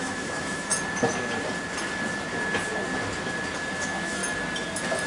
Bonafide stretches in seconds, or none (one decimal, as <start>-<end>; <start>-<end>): 0.7-3.8; 4.2-5.1